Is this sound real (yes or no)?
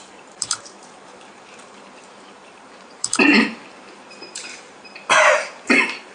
no